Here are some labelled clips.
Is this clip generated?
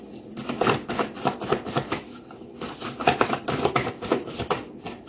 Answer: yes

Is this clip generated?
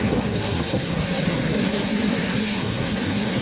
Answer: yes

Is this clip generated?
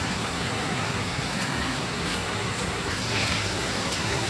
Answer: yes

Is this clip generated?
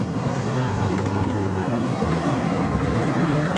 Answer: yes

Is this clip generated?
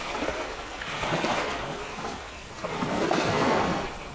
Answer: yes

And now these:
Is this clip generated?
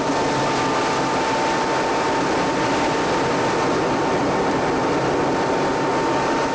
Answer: no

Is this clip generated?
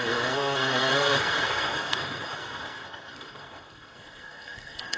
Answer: yes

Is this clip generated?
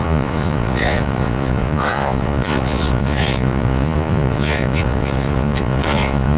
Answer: yes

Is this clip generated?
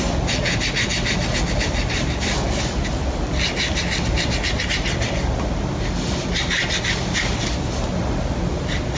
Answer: no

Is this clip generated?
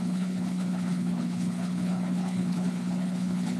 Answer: yes